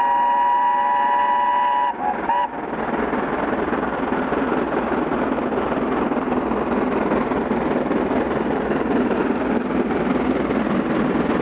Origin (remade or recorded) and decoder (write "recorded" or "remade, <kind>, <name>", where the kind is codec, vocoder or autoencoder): recorded